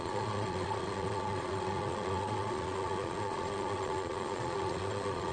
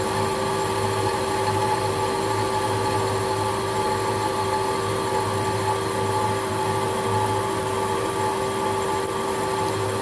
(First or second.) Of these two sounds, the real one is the second